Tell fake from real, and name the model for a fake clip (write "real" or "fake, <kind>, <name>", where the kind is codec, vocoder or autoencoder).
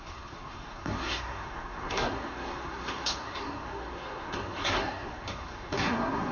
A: fake, codec, SNAC